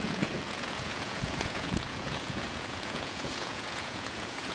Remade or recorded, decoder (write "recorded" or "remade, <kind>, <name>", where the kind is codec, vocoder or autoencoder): remade, vocoder, Vocos